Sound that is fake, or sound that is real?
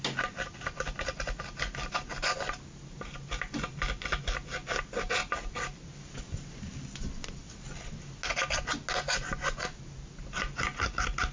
real